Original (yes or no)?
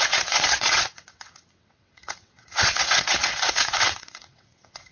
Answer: no